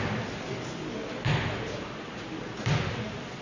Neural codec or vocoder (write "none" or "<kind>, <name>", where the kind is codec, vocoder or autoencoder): none